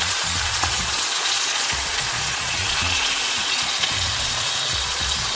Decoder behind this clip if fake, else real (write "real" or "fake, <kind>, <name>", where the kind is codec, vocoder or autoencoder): fake, vocoder, Vocos